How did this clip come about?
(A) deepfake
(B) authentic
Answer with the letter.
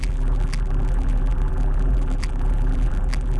A